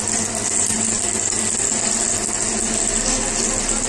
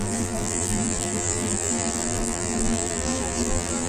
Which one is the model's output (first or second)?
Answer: second